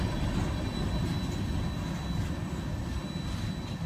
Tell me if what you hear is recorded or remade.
recorded